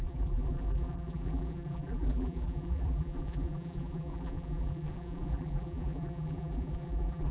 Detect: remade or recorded remade